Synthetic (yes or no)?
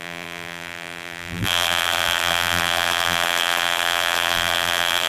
yes